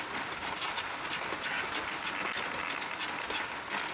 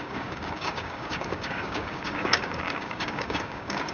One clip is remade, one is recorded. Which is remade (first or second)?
second